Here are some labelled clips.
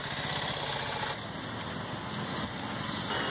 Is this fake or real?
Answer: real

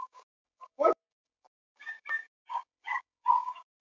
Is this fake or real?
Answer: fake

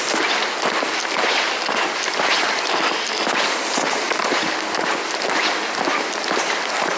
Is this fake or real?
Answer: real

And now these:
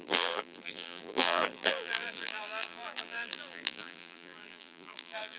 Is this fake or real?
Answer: fake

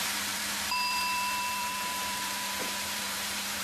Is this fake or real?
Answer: fake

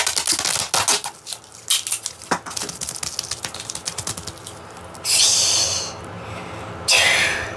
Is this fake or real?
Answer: real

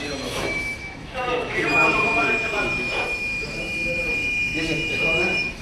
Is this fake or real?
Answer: fake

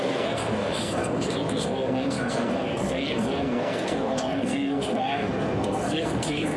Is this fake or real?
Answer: fake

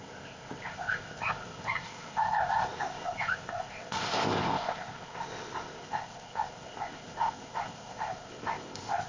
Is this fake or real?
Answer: fake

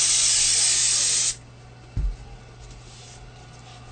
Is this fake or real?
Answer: real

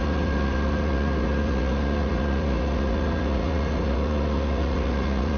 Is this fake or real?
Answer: fake